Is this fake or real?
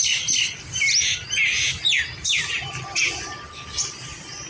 fake